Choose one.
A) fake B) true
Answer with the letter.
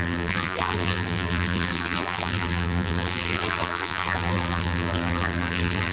A